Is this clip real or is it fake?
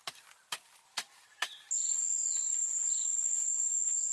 real